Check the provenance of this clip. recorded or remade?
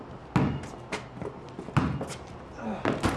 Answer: recorded